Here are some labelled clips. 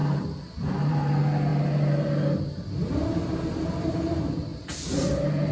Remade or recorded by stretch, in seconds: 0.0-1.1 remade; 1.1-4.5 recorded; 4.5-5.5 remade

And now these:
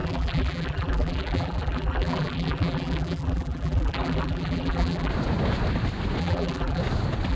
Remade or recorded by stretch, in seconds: 0.0-5.1 remade; 5.1-6.2 recorded; 6.2-6.8 remade; 6.8-7.3 recorded

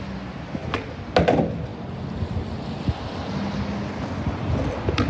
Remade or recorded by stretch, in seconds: 0.0-5.1 recorded

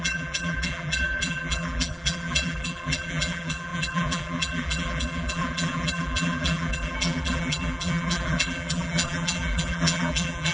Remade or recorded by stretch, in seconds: 0.0-10.5 remade

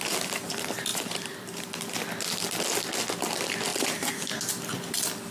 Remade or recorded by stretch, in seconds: 0.0-0.9 recorded; 0.9-1.7 remade; 1.7-3.7 recorded; 3.7-4.5 remade; 4.5-5.3 recorded

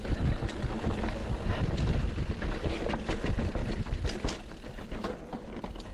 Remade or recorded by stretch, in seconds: 0.0-3.6 recorded; 3.6-4.7 remade; 4.7-5.9 recorded

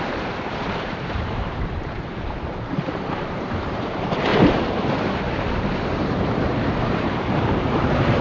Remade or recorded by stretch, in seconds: 0.0-4.3 remade; 4.3-6.0 recorded; 6.0-8.2 remade

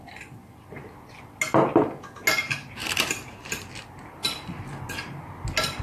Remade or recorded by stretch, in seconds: 0.0-2.8 recorded; 2.8-3.7 remade; 3.7-4.2 recorded; 4.2-4.8 remade; 4.8-5.8 recorded